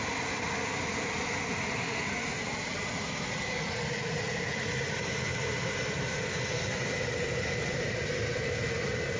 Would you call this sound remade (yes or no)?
no